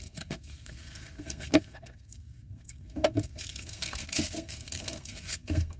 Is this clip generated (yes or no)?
yes